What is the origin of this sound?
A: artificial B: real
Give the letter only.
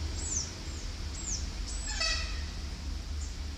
B